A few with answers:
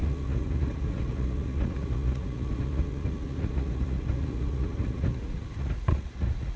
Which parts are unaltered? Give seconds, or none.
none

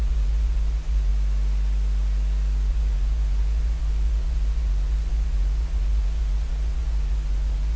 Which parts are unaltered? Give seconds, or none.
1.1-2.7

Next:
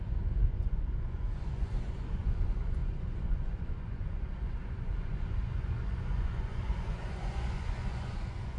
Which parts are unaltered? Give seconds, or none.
none

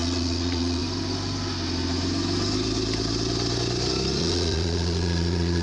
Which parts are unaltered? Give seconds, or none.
0.8-4.2